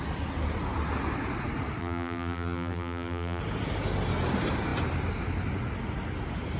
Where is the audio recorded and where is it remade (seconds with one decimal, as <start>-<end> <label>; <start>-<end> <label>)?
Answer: 0.0-1.8 recorded; 1.8-3.4 remade; 3.4-6.6 recorded